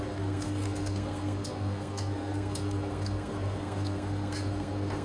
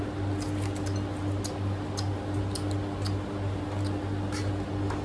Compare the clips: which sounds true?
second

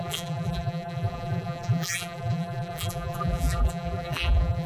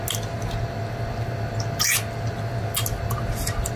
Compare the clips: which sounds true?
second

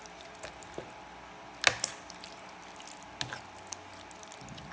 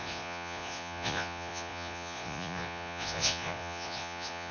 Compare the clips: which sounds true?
first